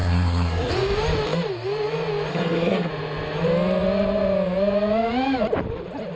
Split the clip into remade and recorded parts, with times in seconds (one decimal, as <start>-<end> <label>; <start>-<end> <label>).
0.0-0.7 remade; 0.7-2.3 recorded; 2.3-2.9 remade; 2.9-6.2 recorded